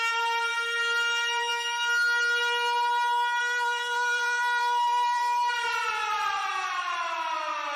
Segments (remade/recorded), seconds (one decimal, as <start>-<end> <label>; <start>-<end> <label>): 0.0-1.5 remade; 1.5-3.4 recorded; 3.4-7.8 remade